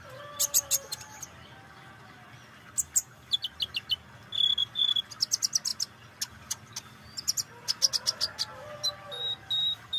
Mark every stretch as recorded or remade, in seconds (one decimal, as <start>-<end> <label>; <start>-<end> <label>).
0.0-3.0 recorded; 3.0-3.5 remade; 3.5-4.6 recorded; 4.6-5.1 remade; 5.1-10.0 recorded